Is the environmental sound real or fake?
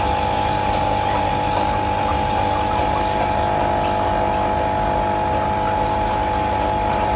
real